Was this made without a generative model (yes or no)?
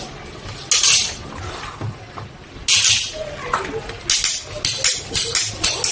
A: yes